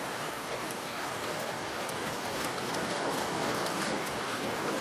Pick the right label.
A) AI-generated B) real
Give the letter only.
A